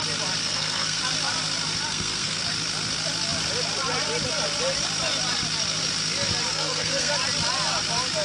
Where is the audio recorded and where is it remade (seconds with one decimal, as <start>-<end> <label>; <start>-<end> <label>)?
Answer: 0.0-0.4 recorded; 0.4-1.0 remade; 1.0-1.9 recorded; 1.9-2.4 remade; 2.4-6.5 recorded; 6.5-7.1 remade; 7.1-8.2 recorded